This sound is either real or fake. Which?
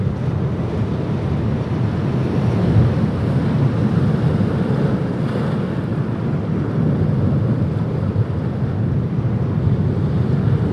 real